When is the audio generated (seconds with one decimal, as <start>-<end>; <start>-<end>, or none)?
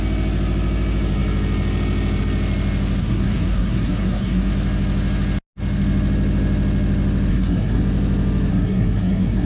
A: 3.0-4.5; 7.3-7.8; 8.5-9.5